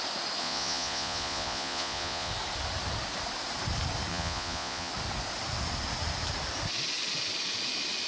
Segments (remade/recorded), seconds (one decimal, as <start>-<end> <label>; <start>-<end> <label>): 0.0-0.4 recorded; 0.4-2.3 remade; 2.3-4.1 recorded; 4.1-4.9 remade; 4.9-8.1 recorded